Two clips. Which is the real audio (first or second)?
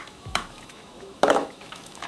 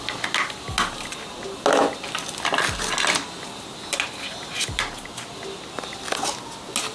second